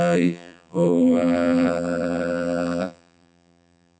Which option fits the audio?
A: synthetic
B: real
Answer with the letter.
A